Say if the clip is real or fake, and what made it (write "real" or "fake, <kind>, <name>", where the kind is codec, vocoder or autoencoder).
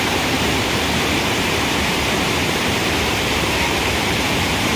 fake, vocoder, BigVGAN v2